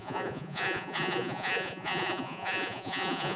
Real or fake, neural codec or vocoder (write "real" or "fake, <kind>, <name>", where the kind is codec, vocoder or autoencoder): fake, vocoder, Vocos